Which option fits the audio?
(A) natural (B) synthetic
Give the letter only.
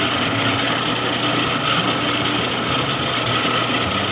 A